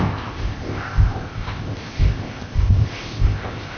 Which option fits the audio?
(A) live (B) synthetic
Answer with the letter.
B